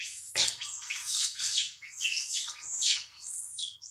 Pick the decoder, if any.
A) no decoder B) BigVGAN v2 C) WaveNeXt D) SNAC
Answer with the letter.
D